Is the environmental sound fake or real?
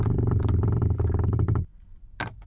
real